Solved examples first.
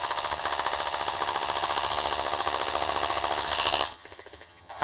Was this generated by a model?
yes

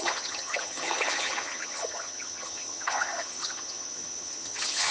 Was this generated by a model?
yes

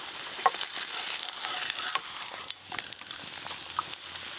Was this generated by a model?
no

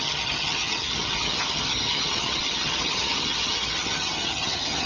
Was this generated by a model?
yes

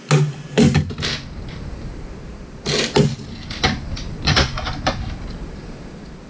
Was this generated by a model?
no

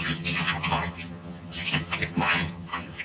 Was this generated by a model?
yes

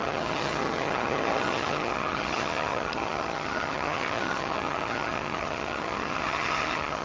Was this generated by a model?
yes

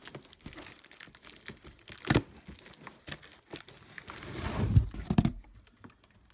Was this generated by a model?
no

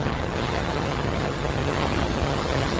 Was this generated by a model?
yes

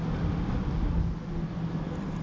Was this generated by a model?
no